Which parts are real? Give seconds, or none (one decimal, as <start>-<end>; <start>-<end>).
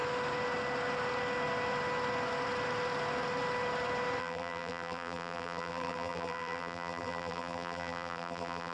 0.0-4.2